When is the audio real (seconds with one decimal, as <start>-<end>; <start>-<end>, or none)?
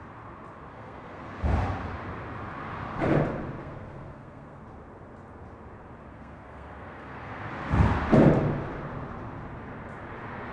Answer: 0.0-0.7; 1.3-3.6; 4.6-6.1; 7.5-10.5